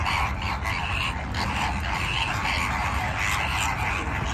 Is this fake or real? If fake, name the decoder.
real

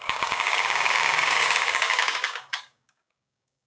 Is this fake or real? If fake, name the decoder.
fake, codec, DAC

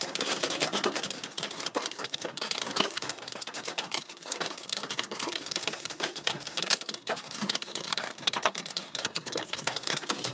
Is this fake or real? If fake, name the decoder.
fake, codec, SNAC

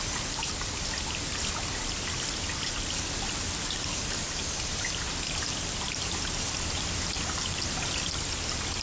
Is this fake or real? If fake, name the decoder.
real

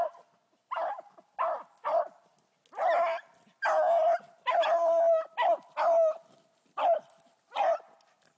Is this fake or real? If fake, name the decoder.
real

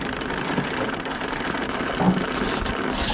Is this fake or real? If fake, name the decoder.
real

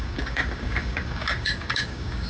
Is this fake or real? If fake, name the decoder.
fake, codec, DAC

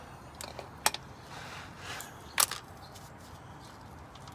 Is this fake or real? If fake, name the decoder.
real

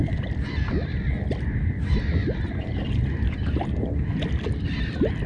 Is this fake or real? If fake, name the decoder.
real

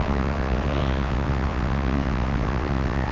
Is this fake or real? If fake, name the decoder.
fake, vocoder, WaveNeXt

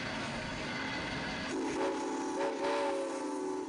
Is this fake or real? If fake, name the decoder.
real